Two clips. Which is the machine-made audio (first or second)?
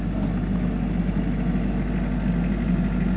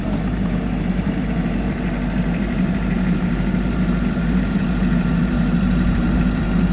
second